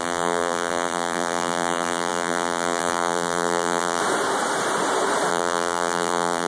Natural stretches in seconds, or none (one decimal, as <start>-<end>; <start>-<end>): 4.0-5.3